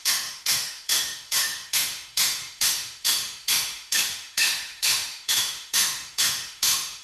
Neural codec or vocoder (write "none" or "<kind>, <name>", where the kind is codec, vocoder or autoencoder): autoencoder, DAC-VAE